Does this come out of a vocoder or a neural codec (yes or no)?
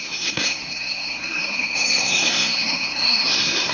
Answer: yes